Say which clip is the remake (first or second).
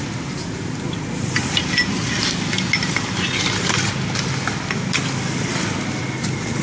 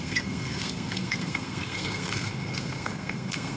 second